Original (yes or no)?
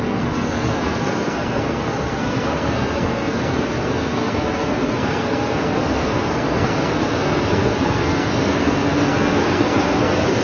no